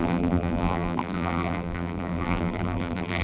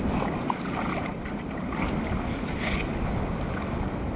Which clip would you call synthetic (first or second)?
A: first